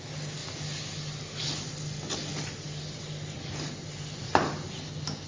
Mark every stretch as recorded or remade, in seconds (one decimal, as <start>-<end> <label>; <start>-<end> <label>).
0.0-5.3 recorded